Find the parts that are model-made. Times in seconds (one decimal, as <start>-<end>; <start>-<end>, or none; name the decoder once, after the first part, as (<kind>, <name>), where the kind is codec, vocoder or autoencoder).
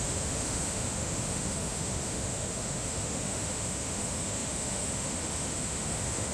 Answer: 0.0-6.3 (autoencoder, DAC-VAE)